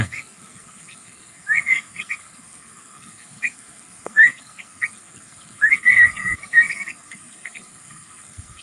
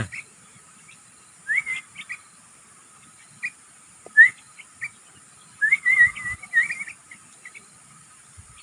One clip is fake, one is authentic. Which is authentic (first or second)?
second